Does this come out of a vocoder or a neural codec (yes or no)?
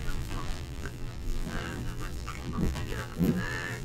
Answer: yes